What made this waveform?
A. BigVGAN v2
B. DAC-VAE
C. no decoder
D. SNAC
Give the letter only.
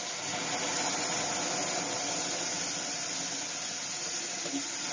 C